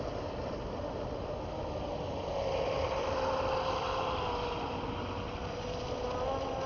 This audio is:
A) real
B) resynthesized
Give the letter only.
A